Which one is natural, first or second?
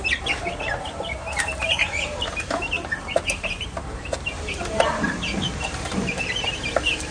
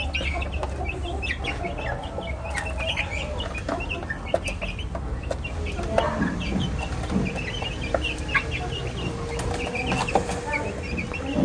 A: second